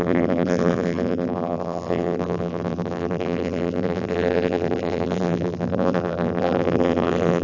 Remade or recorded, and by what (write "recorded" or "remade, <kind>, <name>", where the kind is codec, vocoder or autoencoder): remade, vocoder, BigVGAN v2